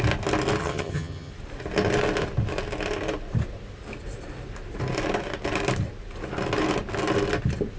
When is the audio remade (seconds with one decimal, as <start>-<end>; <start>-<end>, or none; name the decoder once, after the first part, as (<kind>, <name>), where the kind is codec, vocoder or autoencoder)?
0.6-1.3 (vocoder, HiFi-GAN)